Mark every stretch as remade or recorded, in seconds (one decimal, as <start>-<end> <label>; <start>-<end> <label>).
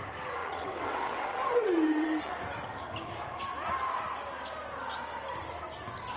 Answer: 0.0-0.4 recorded; 0.4-2.3 remade; 2.3-6.2 recorded